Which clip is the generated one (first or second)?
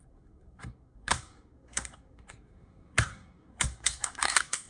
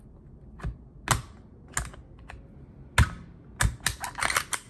first